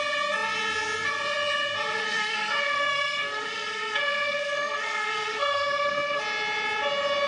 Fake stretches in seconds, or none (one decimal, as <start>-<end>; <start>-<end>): 2.0-6.2